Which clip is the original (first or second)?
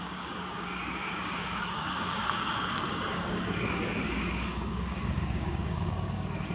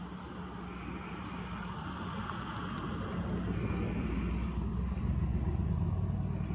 second